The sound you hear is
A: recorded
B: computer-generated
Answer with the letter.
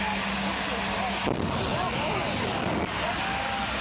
A